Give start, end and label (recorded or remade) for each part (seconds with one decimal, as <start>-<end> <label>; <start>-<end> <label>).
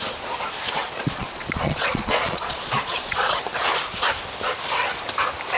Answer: 0.0-0.8 recorded; 0.8-3.4 remade; 3.4-5.6 recorded